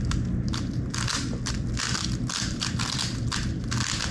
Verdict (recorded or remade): recorded